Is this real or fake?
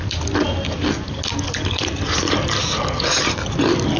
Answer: real